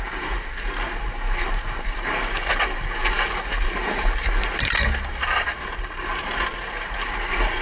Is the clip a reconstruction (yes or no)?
yes